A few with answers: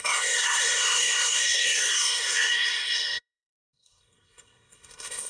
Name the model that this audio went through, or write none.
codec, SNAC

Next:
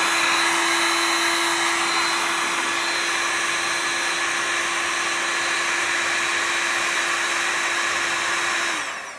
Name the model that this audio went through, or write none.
none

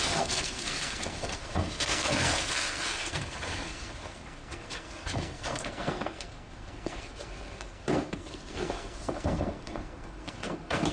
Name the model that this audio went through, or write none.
codec, SNAC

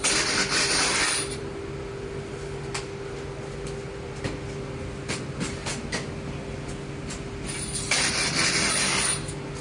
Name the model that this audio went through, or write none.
none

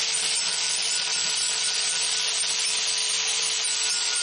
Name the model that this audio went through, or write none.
none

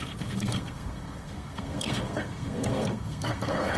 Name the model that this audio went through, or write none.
codec, SNAC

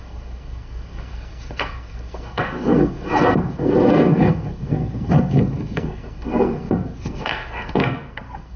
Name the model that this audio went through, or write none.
codec, SNAC